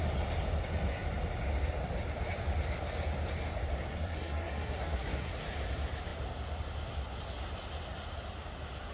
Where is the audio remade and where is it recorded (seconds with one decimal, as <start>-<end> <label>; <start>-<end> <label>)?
0.0-3.9 recorded; 3.9-5.3 remade; 5.3-8.9 recorded